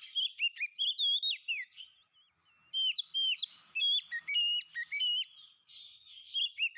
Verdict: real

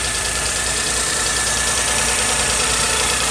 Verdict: fake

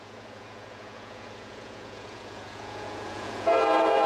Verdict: fake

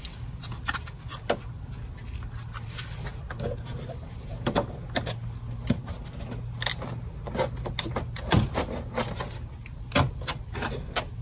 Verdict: real